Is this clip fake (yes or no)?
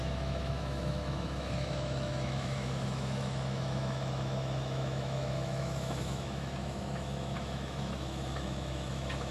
yes